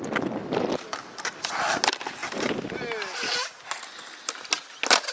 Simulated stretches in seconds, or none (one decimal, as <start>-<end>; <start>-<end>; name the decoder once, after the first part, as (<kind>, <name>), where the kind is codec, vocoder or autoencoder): 0.4-1.4 (vocoder, BigVGAN v2)